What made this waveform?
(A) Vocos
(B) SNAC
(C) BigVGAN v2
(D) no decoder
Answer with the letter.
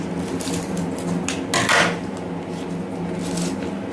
D